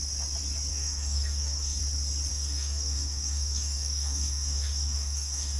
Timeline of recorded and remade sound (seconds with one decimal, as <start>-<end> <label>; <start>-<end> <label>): 0.0-0.7 recorded; 0.7-1.8 remade; 1.8-2.3 recorded; 2.3-5.6 remade